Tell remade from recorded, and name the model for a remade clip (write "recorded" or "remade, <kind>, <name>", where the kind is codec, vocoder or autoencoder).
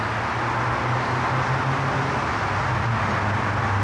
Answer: recorded